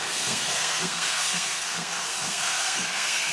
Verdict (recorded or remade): remade